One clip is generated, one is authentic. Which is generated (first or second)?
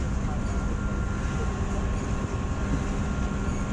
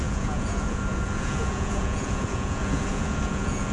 second